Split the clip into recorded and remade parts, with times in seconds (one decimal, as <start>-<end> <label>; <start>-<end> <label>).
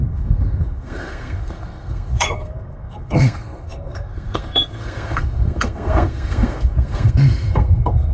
0.0-8.1 remade